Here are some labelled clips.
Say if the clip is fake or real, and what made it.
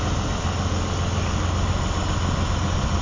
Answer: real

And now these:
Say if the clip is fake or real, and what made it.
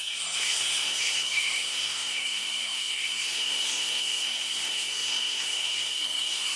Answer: fake, codec, SNAC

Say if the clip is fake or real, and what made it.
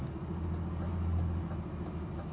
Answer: real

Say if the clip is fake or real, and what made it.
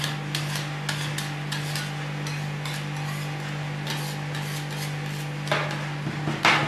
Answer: real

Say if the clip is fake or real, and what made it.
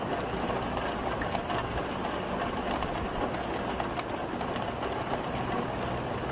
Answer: real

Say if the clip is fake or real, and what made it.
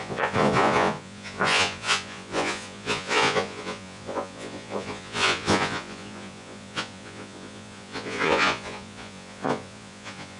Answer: fake, vocoder, Vocos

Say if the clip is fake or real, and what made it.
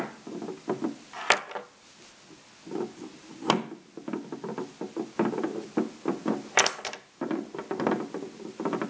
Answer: real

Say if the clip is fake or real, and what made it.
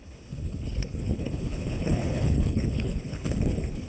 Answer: fake, codec, HILCodec